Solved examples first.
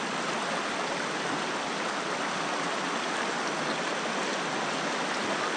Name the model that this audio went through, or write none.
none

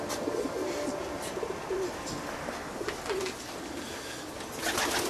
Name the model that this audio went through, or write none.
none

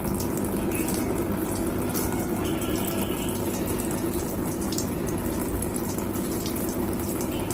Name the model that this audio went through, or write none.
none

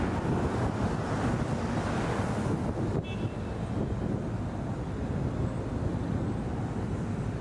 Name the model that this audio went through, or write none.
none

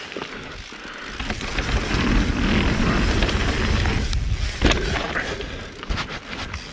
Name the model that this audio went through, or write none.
none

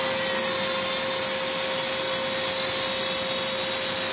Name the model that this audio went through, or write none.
none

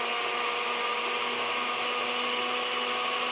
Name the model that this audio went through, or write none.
none